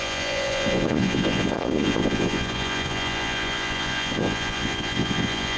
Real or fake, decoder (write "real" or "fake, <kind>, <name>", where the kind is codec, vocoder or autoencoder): fake, vocoder, Vocos